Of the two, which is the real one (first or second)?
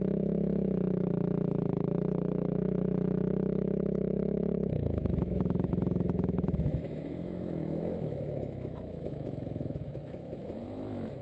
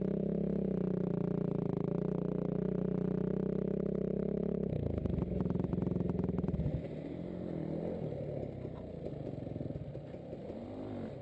second